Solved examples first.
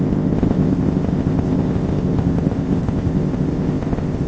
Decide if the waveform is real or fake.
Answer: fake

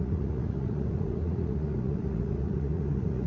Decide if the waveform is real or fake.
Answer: fake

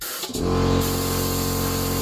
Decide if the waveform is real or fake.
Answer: real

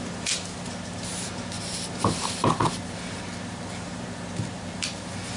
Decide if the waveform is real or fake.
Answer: real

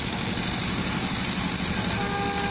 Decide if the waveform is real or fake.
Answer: real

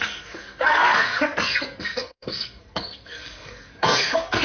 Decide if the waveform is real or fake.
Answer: fake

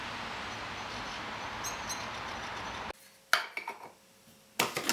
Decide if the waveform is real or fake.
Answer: real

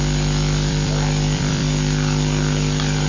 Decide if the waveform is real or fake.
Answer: fake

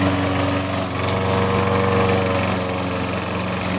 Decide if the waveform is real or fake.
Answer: real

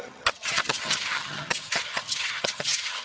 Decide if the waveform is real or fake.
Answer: fake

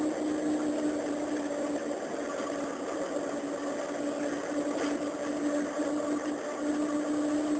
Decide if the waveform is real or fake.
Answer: real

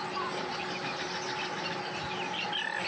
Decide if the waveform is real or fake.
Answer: real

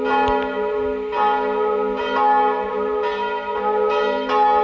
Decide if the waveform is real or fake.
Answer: real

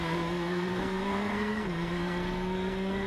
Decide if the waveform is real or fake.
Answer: fake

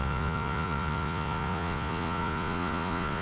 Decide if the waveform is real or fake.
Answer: fake